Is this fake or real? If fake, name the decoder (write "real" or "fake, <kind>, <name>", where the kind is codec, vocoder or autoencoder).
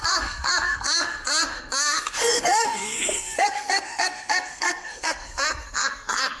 fake, codec, SNAC